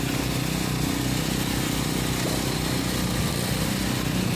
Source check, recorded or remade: recorded